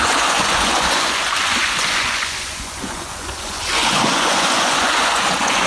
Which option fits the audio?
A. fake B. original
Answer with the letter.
A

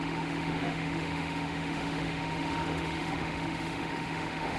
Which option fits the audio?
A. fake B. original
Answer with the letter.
A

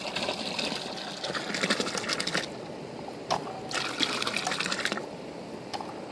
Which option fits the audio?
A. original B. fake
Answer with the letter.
A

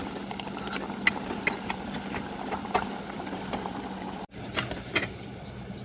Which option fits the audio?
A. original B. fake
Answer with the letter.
B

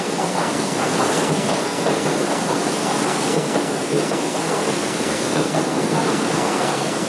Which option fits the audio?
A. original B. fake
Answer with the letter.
B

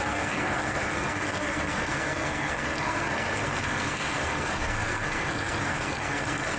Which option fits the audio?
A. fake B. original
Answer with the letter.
A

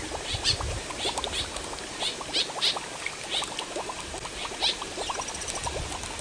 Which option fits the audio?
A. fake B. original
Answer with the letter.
B